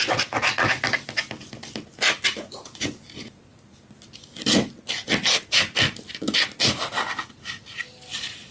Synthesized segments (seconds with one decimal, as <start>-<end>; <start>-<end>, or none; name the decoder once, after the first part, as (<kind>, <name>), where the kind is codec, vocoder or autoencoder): none